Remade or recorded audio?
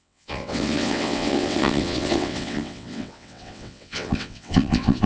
remade